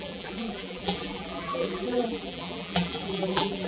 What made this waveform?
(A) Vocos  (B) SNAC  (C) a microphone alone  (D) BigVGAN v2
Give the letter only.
D